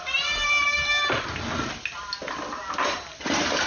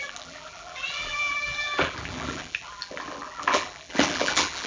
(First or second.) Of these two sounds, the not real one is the second